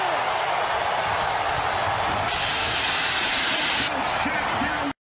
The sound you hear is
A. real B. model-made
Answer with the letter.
A